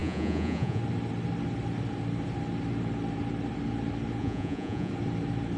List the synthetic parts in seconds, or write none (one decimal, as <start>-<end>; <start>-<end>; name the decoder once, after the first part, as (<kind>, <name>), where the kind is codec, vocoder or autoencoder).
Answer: 0.0-0.8 (vocoder, Vocos); 4.2-4.9